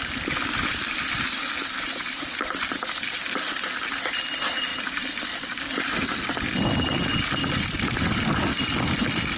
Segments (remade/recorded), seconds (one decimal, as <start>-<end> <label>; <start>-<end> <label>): 0.0-4.7 recorded; 4.7-7.1 remade; 7.1-9.4 recorded